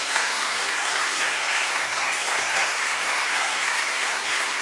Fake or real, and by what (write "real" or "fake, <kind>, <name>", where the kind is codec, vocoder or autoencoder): fake, codec, SNAC